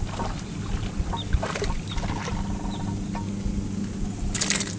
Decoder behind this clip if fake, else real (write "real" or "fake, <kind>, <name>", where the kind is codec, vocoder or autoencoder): real